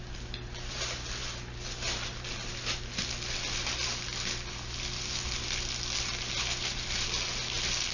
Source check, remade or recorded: recorded